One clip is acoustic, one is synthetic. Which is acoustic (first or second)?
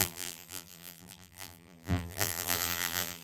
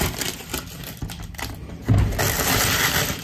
second